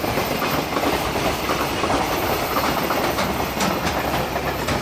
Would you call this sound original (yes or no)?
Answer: yes